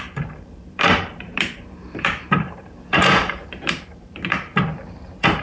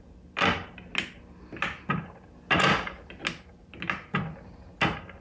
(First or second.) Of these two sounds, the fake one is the first